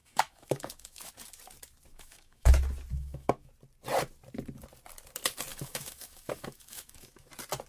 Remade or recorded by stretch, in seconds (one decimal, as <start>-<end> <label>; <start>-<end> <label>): 0.0-1.1 remade; 1.1-1.9 recorded; 1.9-2.5 remade; 2.5-2.9 recorded; 2.9-3.5 remade; 3.5-5.5 recorded; 5.5-7.3 remade; 7.3-7.7 recorded